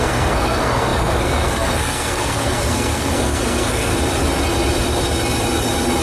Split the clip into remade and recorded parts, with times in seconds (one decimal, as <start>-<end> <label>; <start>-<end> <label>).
0.0-3.9 remade; 3.9-6.0 recorded